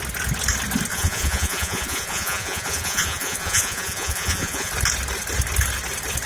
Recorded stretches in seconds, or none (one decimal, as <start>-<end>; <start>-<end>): 0.0-0.9; 4.7-6.3